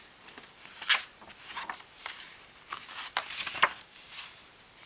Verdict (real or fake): real